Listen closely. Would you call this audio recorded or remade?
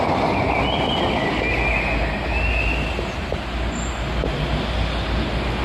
recorded